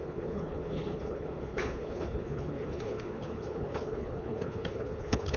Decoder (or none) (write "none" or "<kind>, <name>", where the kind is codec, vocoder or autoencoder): codec, HILCodec